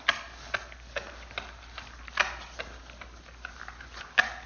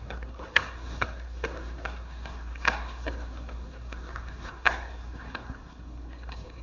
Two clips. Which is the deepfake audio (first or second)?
second